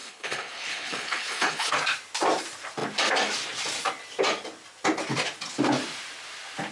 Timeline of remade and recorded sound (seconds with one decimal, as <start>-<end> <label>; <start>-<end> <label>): 0.0-1.7 remade; 1.7-6.7 recorded